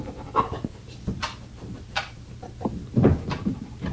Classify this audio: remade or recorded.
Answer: recorded